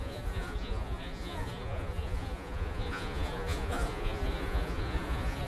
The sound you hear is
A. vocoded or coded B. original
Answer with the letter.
A